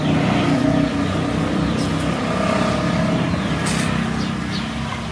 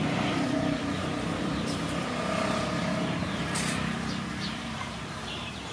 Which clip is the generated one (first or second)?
second